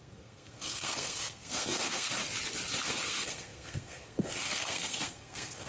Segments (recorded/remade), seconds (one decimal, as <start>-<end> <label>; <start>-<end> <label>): 0.0-2.1 remade; 2.1-2.8 recorded; 2.8-5.7 remade